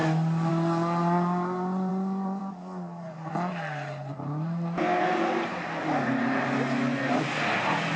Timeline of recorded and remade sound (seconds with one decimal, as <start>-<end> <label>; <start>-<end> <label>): 0.0-8.0 recorded